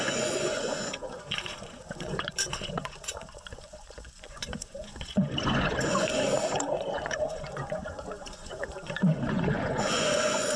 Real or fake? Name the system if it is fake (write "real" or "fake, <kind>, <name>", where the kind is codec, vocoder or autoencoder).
fake, vocoder, Vocos